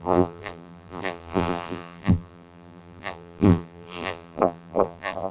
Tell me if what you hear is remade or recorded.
remade